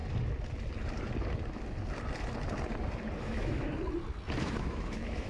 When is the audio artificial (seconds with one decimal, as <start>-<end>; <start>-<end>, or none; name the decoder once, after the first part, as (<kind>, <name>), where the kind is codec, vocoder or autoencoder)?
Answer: 3.2-3.7 (autoencoder, DAC-VAE); 4.4-5.3